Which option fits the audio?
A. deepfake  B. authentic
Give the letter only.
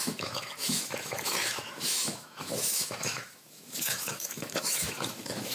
A